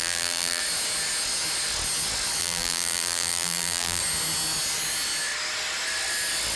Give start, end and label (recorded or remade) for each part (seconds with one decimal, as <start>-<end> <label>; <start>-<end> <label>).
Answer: 0.0-0.6 remade; 0.6-2.4 recorded; 2.4-4.0 remade; 4.0-6.6 recorded